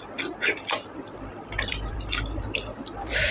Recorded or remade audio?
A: remade